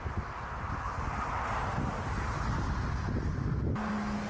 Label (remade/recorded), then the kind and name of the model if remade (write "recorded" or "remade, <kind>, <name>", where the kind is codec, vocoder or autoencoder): recorded